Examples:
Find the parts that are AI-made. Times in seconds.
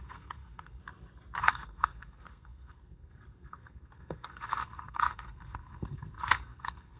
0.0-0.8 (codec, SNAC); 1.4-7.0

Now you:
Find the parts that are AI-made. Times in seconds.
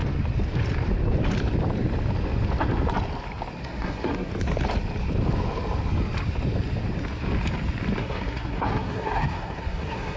3.6-4.3 (codec, SNAC); 8.0-10.2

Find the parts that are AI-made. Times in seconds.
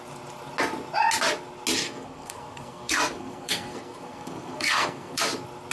1.8-5.2 (codec, SNAC)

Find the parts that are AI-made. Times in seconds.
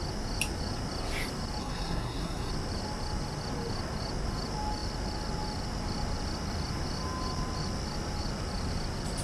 1.6-2.5 (codec, SNAC)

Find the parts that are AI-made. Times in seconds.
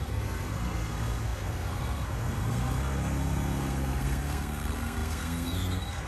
0.0-6.1 (codec, SNAC)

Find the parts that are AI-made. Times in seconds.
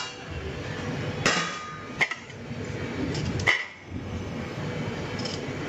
3.6-4.6 (codec, SNAC)